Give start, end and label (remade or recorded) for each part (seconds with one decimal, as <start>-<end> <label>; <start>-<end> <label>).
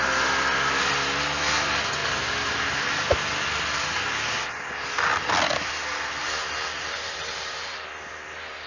0.0-6.2 recorded; 6.2-7.8 remade; 7.8-8.7 recorded